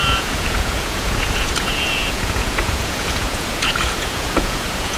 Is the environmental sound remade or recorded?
remade